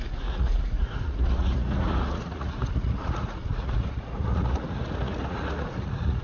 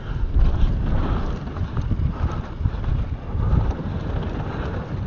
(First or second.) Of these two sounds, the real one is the second